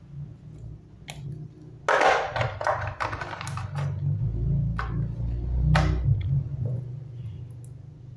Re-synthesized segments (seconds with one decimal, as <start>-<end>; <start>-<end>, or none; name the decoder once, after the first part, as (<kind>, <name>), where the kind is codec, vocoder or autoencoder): 6.5-7.4 (vocoder, Vocos)